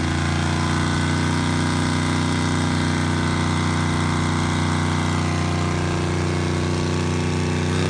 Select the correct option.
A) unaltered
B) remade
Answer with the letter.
A